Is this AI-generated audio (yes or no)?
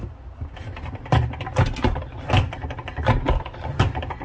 no